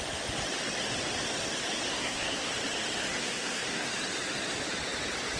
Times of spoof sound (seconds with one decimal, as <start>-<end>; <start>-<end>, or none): 1.9-2.5; 3.1-3.9